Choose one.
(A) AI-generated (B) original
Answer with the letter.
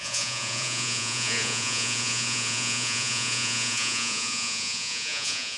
A